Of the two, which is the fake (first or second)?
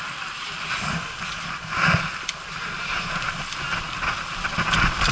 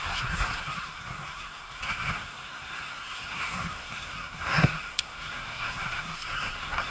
second